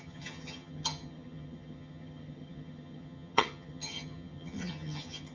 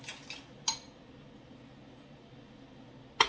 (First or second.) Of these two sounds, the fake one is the first